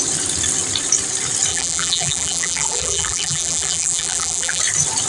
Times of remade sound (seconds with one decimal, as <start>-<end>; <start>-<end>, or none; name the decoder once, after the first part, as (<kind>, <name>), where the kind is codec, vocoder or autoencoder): 1.5-4.6 (vocoder, BigVGAN v2)